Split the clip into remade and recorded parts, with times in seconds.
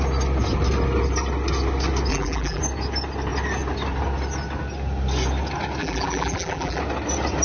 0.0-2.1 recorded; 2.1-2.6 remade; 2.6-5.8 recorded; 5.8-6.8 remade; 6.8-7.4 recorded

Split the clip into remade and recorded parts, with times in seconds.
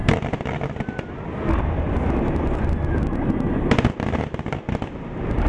0.0-5.5 recorded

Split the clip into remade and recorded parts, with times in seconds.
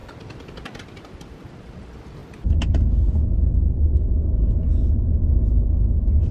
0.0-0.8 recorded; 0.8-2.2 remade; 2.2-5.7 recorded; 5.7-6.3 remade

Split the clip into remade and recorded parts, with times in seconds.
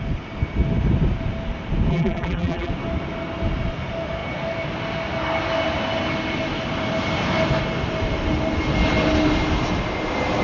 0.0-1.9 recorded; 1.9-2.7 remade; 2.7-10.4 recorded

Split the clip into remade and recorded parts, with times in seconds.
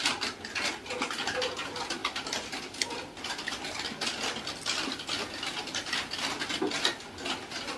0.0-7.8 recorded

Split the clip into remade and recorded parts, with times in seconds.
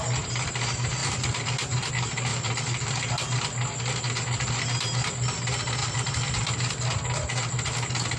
0.0-1.0 recorded; 1.0-1.9 remade; 1.9-2.3 recorded; 2.3-3.1 remade; 3.1-5.8 recorded; 5.8-6.7 remade; 6.7-8.2 recorded